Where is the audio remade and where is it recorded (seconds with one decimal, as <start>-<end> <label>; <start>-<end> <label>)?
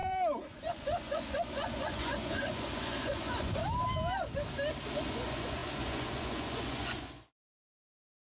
0.0-3.6 remade; 3.6-5.1 recorded; 5.1-8.2 remade